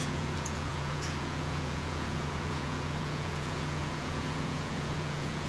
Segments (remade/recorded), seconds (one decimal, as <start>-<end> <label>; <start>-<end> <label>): 0.0-5.5 remade